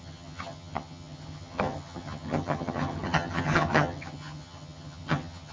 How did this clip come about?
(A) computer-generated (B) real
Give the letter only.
A